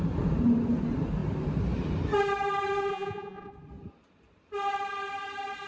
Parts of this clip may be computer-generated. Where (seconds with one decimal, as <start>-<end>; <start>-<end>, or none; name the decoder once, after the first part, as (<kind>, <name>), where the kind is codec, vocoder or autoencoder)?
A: 2.9-3.5 (vocoder, Vocos)